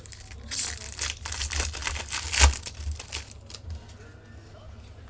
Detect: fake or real real